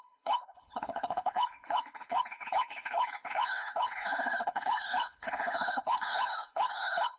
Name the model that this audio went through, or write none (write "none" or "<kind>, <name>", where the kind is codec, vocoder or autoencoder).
codec, HILCodec